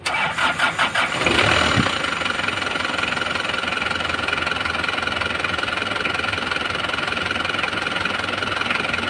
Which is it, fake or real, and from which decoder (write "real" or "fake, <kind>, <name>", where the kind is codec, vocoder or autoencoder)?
real